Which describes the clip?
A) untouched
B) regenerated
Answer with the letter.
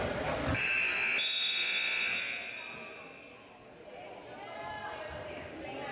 A